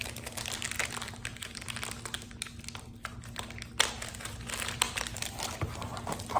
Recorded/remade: recorded